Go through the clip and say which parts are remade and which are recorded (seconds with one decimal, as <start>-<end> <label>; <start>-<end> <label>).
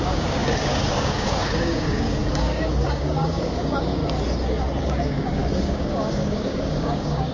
0.0-4.0 remade; 4.0-4.8 recorded; 4.8-7.3 remade